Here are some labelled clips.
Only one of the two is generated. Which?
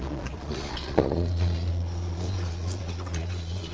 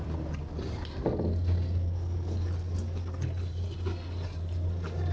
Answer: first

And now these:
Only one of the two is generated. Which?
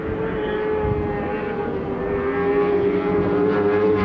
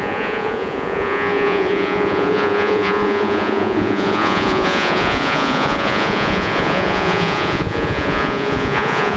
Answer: second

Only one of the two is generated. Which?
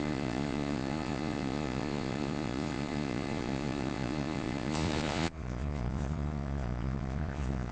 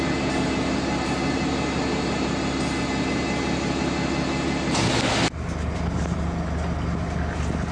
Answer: first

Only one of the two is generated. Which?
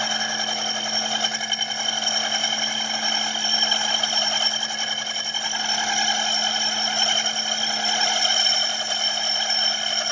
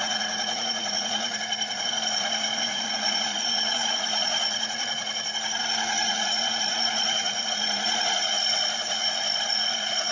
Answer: second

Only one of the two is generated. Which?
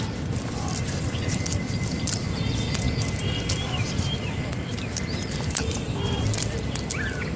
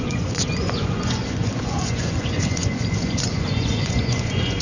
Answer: second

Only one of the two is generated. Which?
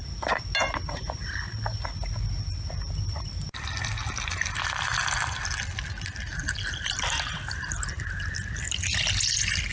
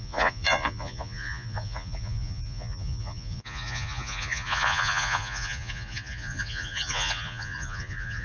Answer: second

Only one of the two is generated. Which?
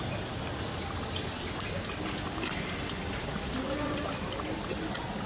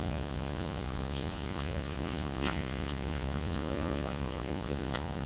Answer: second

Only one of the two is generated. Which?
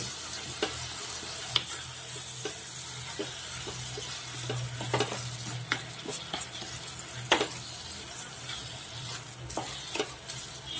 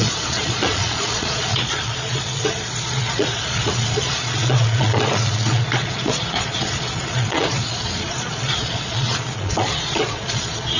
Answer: second